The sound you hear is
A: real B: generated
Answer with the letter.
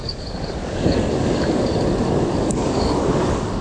B